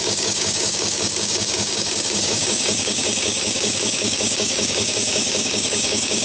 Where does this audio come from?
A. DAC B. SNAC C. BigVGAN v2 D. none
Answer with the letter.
A